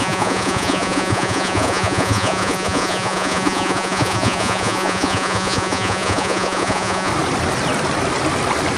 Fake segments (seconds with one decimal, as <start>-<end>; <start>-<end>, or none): 0.0-7.1